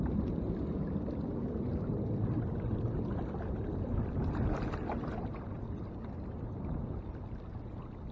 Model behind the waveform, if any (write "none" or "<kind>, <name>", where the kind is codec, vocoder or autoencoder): none